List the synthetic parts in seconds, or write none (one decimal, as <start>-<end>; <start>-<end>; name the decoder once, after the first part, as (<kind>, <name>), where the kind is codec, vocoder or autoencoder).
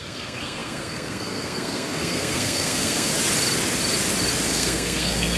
0.0-3.1 (codec, SNAC); 4.5-5.4